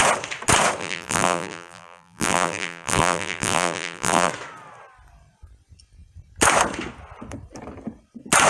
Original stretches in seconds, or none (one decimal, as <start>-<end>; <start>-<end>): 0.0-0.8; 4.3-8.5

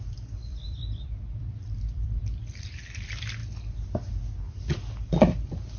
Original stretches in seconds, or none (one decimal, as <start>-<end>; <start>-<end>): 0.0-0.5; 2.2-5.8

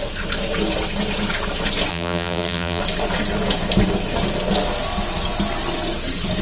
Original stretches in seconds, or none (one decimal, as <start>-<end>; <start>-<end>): 0.0-1.9; 2.8-6.4

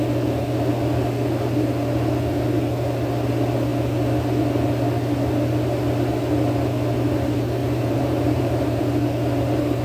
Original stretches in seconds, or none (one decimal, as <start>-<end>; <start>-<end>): 0.0-7.6; 8.8-9.8

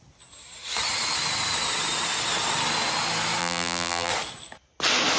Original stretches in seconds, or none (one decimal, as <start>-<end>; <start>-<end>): 0.0-3.4; 4.1-5.2

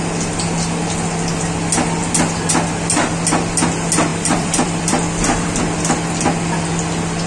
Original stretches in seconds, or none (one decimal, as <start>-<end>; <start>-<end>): 0.0-4.1; 5.6-7.3

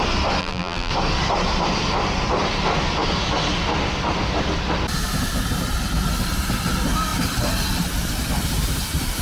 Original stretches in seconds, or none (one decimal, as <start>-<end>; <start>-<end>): 0.0-0.4; 0.9-9.2